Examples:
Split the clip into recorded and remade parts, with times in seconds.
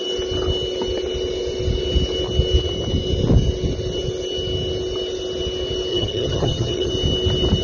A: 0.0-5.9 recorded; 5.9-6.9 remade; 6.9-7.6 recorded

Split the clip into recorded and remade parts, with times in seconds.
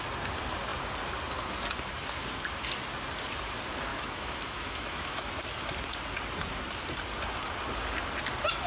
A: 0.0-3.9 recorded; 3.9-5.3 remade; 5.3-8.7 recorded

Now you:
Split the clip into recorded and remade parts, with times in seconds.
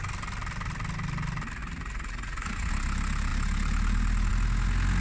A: 0.0-1.6 recorded; 1.6-2.7 remade; 2.7-5.0 recorded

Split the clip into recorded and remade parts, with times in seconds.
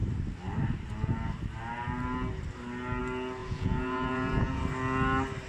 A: 0.0-3.4 recorded; 3.4-4.6 remade; 4.6-5.5 recorded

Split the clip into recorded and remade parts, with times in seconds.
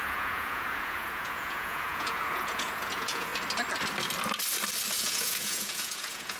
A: 0.0-3.3 remade; 3.3-5.0 recorded; 5.0-6.4 remade